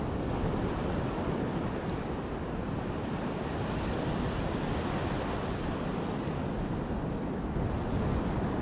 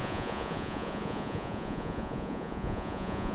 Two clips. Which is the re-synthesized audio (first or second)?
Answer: second